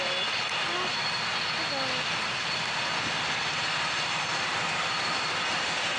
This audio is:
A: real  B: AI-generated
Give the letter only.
A